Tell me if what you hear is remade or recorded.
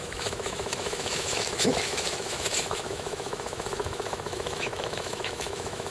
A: remade